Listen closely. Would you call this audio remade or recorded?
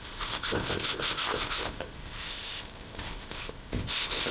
remade